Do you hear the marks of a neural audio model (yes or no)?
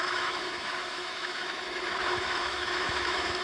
yes